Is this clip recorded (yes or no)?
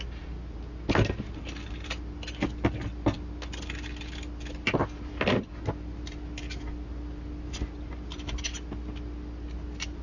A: yes